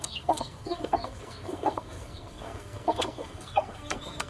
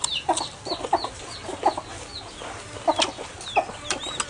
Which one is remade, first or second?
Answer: first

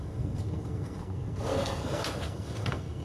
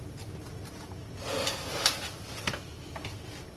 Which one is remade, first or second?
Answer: first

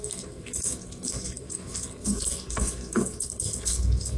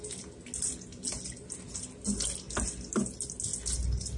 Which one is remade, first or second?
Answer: first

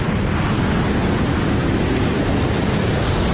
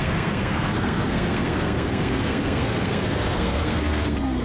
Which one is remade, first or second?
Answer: second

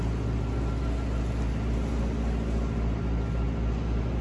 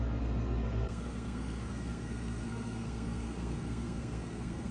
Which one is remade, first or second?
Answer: second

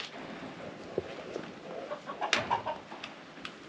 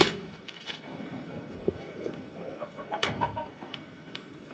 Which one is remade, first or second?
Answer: second